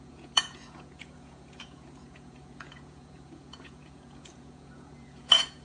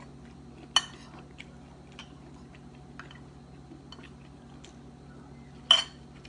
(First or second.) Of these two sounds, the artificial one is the first